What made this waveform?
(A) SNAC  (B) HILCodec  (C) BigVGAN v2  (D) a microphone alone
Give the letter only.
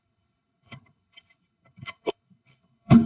B